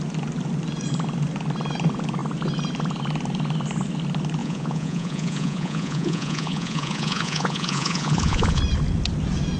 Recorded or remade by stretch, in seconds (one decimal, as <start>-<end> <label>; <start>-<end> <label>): 0.0-4.4 recorded; 4.4-8.6 remade; 8.6-9.6 recorded